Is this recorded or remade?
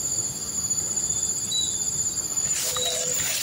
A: recorded